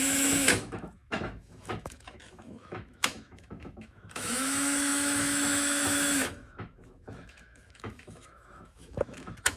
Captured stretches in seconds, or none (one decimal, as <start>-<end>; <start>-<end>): none

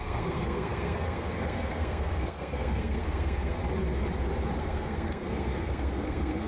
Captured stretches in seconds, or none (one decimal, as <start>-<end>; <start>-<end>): 3.6-4.6

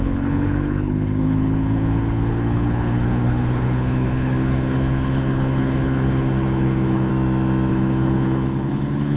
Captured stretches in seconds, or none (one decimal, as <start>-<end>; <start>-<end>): 7.1-7.7

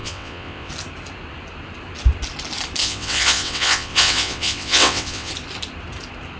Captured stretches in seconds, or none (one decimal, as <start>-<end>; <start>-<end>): 0.7-2.8; 5.3-6.4